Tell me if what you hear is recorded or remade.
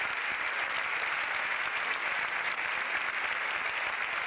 recorded